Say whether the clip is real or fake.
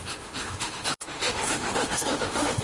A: fake